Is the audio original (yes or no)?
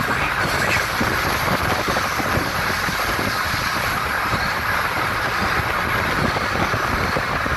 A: yes